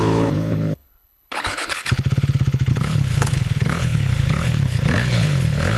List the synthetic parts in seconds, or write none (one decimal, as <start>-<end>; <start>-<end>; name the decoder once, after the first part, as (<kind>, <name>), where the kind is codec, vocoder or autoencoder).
0.0-5.8 (codec, HILCodec)